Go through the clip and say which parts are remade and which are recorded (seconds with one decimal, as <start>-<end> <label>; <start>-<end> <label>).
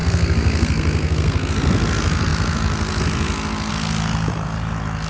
0.0-1.5 remade; 1.5-5.1 recorded